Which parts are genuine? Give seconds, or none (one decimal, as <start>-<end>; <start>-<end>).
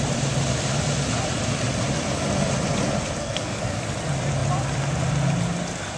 0.0-3.2; 3.8-6.0